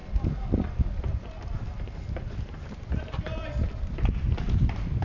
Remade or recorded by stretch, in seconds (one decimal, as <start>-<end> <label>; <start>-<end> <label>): 0.0-5.0 recorded